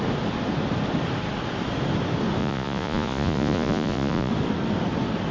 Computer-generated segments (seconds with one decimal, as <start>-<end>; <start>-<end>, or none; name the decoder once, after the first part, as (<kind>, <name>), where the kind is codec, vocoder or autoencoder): 2.4-4.3 (vocoder, Vocos)